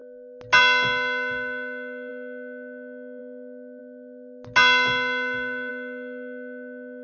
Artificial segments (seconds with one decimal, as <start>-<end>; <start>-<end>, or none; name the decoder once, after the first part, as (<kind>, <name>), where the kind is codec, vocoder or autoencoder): none